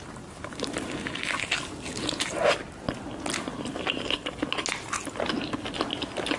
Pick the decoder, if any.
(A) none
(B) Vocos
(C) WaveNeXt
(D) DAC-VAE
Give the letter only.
A